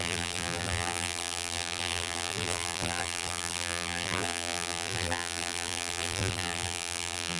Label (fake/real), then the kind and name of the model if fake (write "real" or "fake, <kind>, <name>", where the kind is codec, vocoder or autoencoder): fake, vocoder, BigVGAN v2